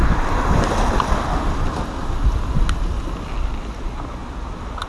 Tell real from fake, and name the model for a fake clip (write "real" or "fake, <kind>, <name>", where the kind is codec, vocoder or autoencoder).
real